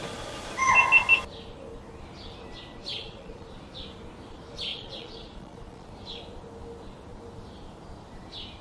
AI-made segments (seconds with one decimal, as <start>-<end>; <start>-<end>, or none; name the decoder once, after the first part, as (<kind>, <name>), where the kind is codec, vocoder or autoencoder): 2.9-3.5 (vocoder, Vocos); 4.7-5.9

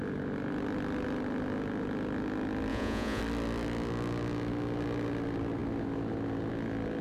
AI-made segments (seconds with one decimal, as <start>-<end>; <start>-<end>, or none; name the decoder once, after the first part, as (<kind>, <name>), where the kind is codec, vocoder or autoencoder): 2.7-3.2 (vocoder, Vocos)